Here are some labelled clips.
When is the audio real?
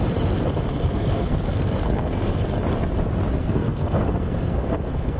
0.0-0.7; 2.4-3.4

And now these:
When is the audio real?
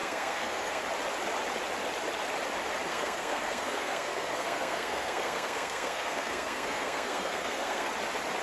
0.8-2.9; 7.9-8.4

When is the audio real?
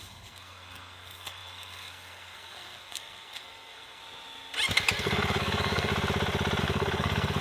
4.0-5.0; 5.9-6.6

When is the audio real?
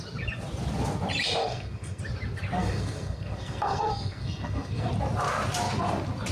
0.0-1.4; 2.0-2.6; 4.9-6.3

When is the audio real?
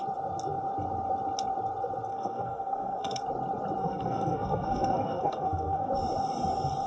0.0-2.1; 3.2-3.8; 5.9-6.9